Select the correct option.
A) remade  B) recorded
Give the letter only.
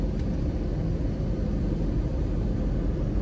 B